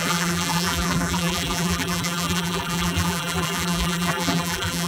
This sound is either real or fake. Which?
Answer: fake